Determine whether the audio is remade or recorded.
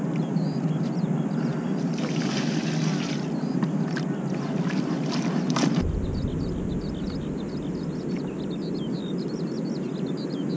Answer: recorded